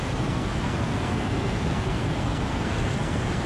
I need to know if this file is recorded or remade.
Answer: remade